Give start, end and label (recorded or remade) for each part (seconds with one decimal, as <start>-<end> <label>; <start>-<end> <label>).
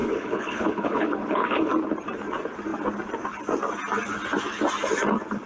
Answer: 0.0-1.7 remade; 1.7-5.5 recorded